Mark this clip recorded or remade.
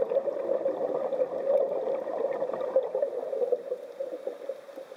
recorded